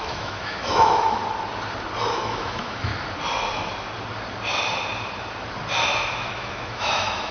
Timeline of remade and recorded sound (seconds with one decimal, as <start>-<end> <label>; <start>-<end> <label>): 0.0-1.2 remade; 1.2-2.1 recorded; 2.1-2.9 remade; 2.9-6.1 recorded; 6.1-7.3 remade